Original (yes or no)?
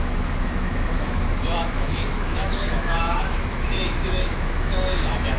no